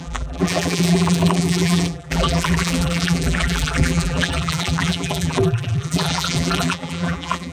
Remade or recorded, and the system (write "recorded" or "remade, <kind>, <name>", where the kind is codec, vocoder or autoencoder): remade, vocoder, BigVGAN v2